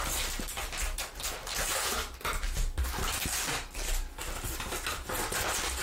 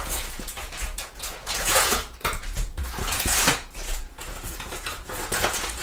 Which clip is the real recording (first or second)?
first